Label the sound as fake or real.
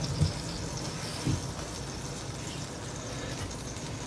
real